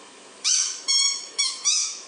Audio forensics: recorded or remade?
remade